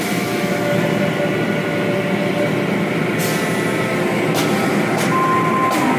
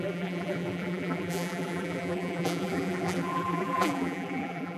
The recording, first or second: first